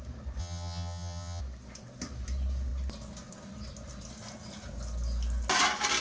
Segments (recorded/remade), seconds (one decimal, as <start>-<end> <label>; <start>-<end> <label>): 0.0-0.4 recorded; 0.4-1.4 remade; 1.4-6.0 recorded